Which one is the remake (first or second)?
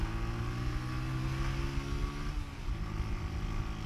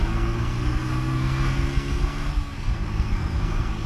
second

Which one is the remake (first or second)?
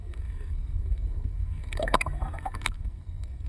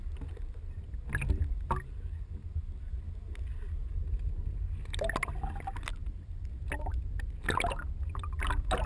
first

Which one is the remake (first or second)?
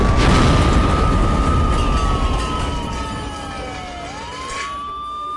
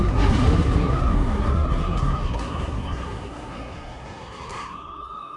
second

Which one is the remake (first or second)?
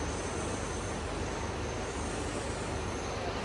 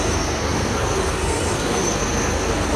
second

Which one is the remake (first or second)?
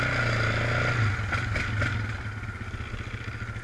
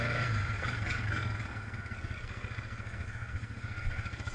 second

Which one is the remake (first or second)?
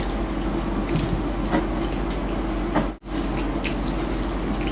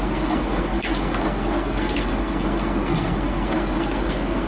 second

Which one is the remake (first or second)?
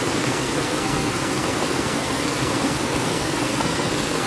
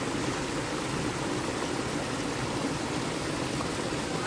first